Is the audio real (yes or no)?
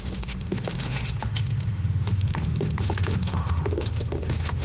no